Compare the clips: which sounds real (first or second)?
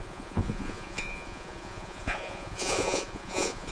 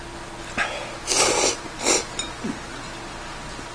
second